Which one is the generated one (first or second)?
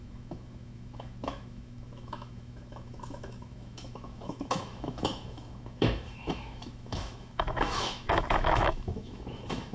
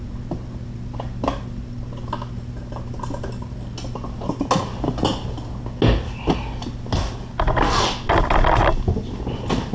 first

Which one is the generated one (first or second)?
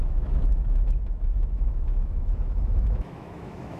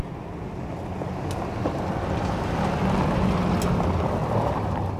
first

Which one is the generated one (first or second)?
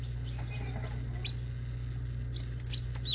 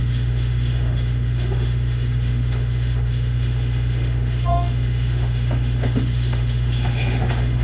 second